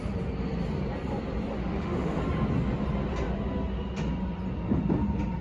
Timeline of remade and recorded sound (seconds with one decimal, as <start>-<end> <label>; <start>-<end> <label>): 0.0-1.6 recorded; 1.6-2.2 remade; 2.2-5.4 recorded